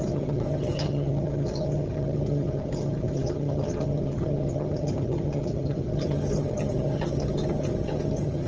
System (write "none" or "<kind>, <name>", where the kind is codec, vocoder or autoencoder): vocoder, HiFi-GAN